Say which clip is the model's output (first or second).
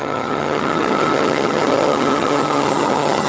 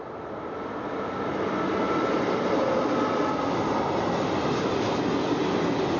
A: first